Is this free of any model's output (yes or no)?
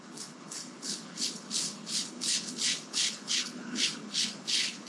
no